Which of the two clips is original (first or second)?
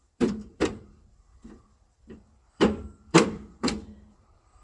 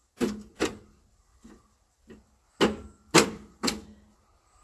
second